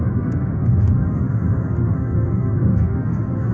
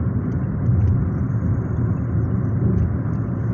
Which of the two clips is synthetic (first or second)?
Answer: first